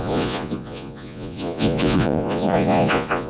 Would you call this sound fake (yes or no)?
yes